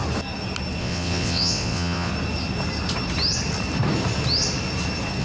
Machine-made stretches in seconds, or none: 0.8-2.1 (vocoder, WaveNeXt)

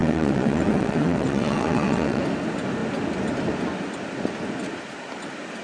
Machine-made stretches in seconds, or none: 0.0-2.2 (vocoder, WaveNeXt)

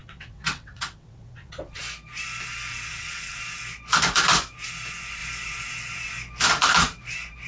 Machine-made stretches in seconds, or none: 0.0-1.8 (vocoder, WaveNeXt); 2.7-3.4

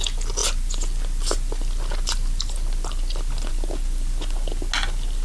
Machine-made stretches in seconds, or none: none

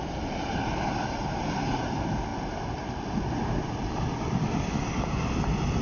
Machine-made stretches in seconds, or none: none

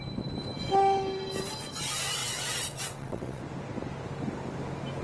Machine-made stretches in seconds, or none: 2.2-3.4 (vocoder, WaveNeXt)

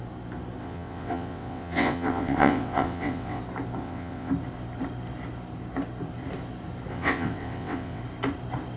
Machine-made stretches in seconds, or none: 0.6-3.4 (vocoder, WaveNeXt); 3.8-4.3; 6.9-8.0